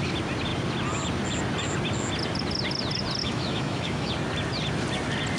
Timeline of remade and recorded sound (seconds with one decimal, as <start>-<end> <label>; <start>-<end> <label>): 0.0-3.2 recorded; 3.2-4.1 remade; 4.1-5.4 recorded